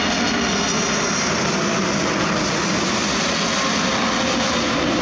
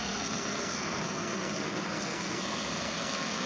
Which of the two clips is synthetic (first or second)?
second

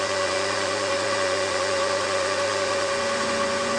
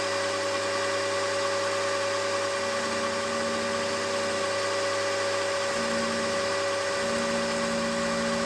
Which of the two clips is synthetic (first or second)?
first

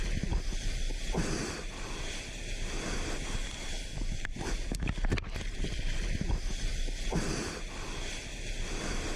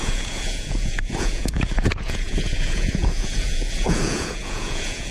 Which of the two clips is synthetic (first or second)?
second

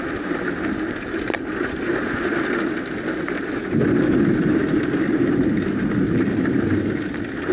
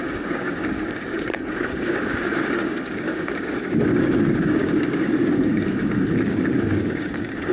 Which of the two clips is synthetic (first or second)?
second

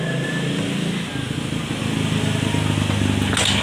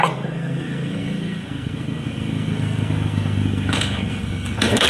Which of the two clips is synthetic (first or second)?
second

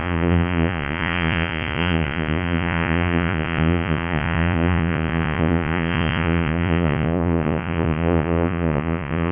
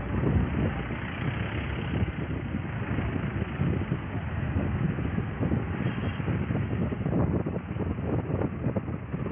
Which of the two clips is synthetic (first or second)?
first